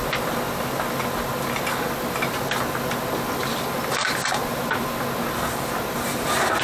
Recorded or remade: recorded